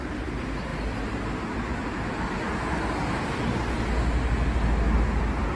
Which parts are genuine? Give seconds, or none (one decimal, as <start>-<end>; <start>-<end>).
0.0-5.6

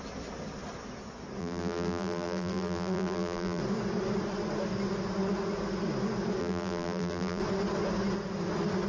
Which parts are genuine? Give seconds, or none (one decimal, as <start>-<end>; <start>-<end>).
0.0-1.4; 3.6-6.4; 7.4-8.9

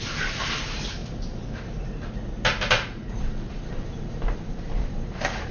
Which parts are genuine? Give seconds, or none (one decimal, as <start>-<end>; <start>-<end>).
1.0-2.7